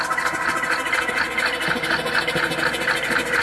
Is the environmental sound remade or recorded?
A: recorded